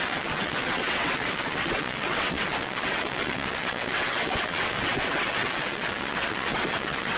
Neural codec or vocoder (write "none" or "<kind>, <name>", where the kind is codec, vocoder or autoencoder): vocoder, WaveNeXt